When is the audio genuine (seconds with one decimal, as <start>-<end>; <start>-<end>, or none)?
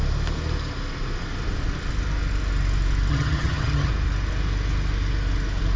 0.0-3.1; 3.9-5.8